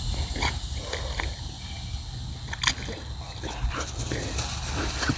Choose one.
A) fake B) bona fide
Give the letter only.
B